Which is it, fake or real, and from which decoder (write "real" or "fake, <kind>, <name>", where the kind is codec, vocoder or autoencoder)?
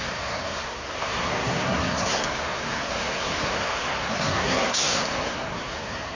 fake, codec, SNAC